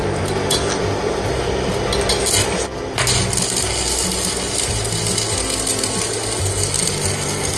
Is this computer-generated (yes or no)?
no